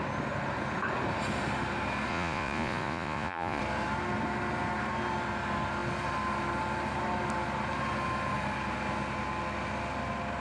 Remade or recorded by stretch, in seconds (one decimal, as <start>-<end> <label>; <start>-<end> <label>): 0.0-2.1 recorded; 2.1-3.6 remade; 3.6-10.4 recorded